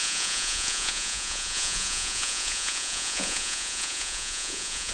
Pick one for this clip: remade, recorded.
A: remade